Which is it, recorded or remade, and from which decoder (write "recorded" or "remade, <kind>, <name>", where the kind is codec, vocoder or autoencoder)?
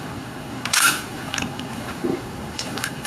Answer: remade, codec, SNAC